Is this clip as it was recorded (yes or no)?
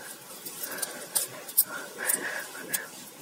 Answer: yes